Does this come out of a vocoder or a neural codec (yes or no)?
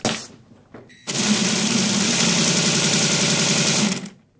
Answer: no